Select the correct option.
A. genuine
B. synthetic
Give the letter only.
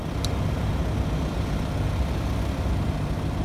A